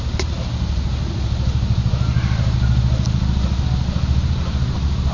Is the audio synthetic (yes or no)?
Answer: no